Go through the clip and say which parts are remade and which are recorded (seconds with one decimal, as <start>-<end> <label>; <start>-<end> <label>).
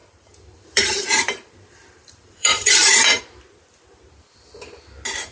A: 0.0-3.2 remade; 3.2-5.3 recorded